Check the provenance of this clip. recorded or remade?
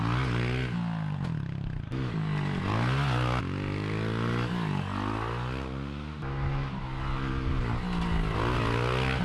recorded